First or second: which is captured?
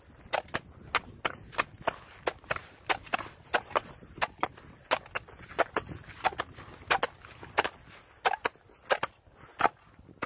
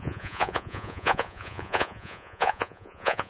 first